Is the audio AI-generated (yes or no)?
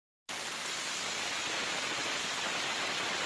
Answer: no